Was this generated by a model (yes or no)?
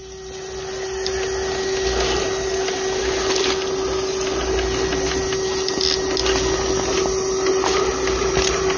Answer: no